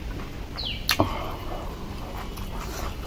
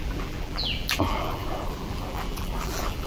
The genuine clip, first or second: first